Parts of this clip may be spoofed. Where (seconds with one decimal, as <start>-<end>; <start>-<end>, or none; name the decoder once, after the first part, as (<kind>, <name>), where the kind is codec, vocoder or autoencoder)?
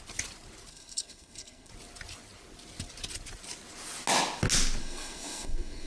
0.7-1.7 (codec, SNAC); 4.8-5.9